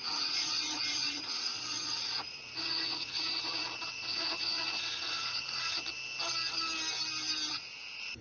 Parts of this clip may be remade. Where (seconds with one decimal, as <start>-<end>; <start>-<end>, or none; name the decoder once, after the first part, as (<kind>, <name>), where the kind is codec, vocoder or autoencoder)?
0.0-5.8 (vocoder, Vocos); 7.5-8.2